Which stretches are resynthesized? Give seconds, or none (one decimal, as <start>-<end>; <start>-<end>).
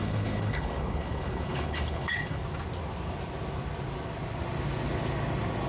0.0-2.4